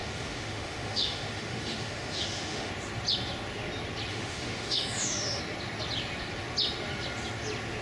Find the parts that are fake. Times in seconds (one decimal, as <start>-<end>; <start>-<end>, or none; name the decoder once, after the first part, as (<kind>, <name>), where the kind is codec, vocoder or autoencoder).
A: 0.0-2.7 (autoencoder, DAC-VAE); 4.1-5.4